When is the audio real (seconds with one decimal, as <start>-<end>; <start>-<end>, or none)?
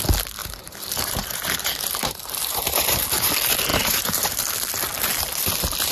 0.0-0.4; 3.3-3.7; 4.4-5.9